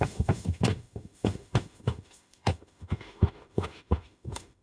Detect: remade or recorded remade